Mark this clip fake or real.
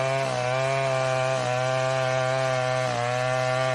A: real